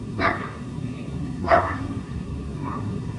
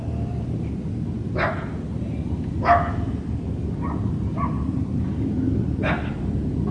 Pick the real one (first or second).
second